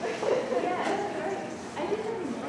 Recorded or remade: recorded